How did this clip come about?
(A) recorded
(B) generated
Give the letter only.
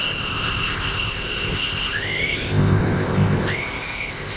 B